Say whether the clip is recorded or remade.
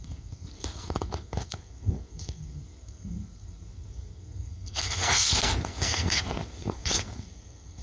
remade